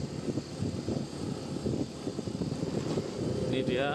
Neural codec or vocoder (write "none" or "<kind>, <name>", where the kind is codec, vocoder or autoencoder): none